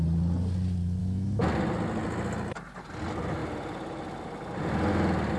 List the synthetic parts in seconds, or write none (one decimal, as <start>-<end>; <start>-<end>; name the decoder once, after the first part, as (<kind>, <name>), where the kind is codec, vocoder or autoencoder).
1.0-1.5 (autoencoder, DAC-VAE)